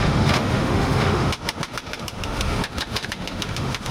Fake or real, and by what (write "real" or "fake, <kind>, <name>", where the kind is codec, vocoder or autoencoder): fake, autoencoder, DAC-VAE